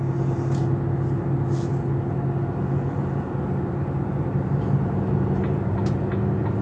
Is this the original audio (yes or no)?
yes